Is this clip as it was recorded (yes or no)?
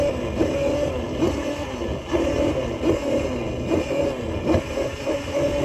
yes